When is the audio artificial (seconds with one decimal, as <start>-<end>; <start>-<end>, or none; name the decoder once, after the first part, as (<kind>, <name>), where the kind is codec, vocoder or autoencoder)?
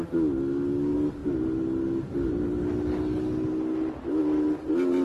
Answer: none